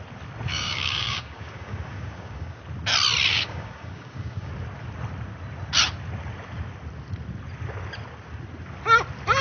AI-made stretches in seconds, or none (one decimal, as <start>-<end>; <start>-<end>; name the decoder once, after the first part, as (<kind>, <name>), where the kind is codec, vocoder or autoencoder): 0.5-2.6 (codec, DAC); 3.3-4.5